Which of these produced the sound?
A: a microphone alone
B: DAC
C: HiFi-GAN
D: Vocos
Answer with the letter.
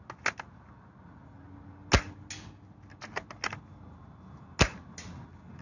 A